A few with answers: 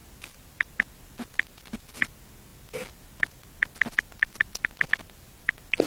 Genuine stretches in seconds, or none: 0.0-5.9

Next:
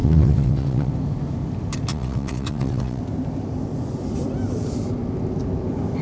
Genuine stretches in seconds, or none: 0.9-1.9; 3.0-6.0

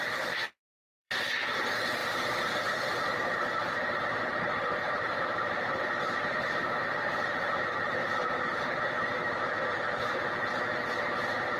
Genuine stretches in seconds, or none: 9.2-11.6